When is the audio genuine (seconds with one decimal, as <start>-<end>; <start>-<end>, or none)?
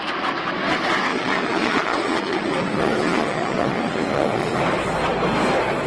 0.0-1.1; 4.6-5.9